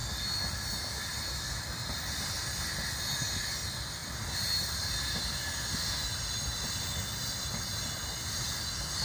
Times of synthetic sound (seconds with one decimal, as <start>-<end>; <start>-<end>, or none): none